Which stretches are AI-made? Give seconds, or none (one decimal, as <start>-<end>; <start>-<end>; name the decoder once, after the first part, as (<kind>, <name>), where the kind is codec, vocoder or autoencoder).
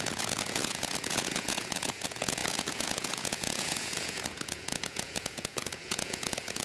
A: 0.0-6.6 (vocoder, Vocos)